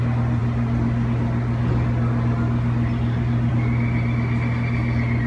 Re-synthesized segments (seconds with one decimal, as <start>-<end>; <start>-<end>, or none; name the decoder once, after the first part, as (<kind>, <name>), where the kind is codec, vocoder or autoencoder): none